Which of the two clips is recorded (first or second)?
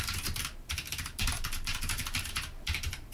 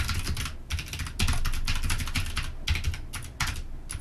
second